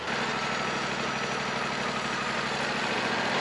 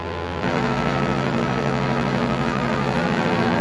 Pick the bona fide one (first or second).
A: first